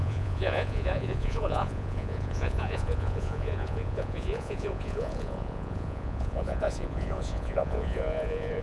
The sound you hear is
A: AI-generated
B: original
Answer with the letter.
A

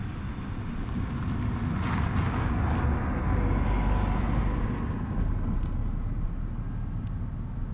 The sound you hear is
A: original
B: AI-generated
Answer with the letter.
A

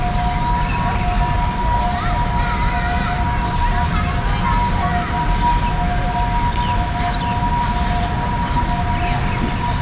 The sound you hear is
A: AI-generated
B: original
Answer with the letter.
B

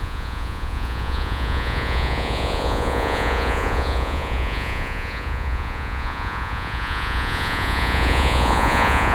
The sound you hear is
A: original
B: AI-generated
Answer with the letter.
B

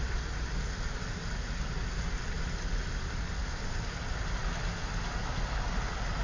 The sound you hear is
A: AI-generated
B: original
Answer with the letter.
B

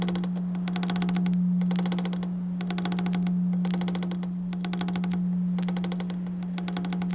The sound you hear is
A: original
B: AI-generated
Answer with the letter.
A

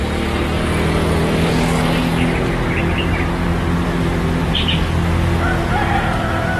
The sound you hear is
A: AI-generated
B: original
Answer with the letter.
B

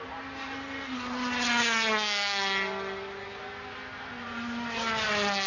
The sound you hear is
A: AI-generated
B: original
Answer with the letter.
B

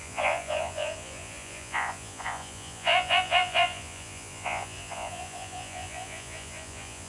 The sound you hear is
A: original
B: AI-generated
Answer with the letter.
B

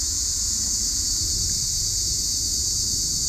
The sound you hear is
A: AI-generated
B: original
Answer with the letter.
A